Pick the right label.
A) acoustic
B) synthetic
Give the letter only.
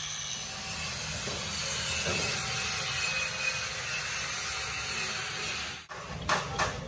A